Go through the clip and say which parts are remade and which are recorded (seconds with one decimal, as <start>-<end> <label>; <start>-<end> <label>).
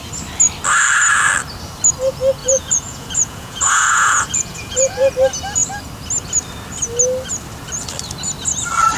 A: 0.0-2.4 recorded; 2.4-5.1 remade; 5.1-9.0 recorded